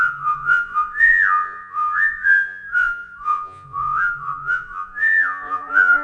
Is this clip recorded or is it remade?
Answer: remade